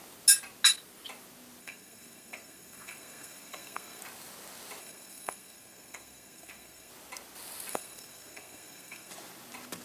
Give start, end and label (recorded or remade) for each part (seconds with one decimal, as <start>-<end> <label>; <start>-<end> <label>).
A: 0.0-1.6 recorded; 1.6-4.0 remade; 4.0-4.8 recorded; 4.8-6.9 remade; 6.9-7.7 recorded; 7.7-9.1 remade; 9.1-9.8 recorded